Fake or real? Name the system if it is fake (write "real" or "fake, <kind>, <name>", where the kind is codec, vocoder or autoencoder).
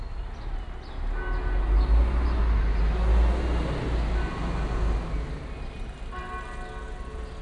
real